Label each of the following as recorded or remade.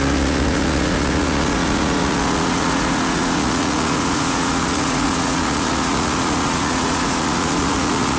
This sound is remade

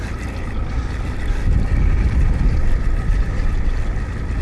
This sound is recorded